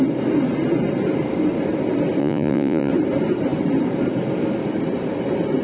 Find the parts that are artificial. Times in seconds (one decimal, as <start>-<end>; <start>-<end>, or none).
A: 2.2-2.9